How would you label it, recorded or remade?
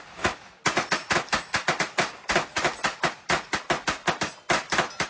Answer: recorded